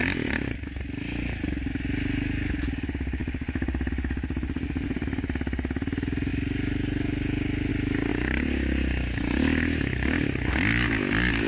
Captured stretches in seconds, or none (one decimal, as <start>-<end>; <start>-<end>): 0.0-11.5